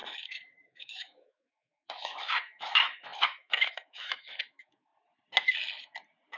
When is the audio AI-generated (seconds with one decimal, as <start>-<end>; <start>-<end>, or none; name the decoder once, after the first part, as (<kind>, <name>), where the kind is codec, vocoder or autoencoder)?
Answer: 0.0-4.9 (autoencoder, DAC-VAE)